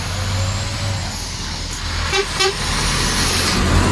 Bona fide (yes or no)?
yes